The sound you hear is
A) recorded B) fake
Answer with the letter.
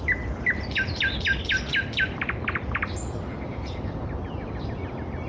A